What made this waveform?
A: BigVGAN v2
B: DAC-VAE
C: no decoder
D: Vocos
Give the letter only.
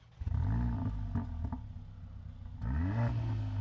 C